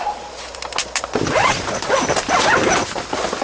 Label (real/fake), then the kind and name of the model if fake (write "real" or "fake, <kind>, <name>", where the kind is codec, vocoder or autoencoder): real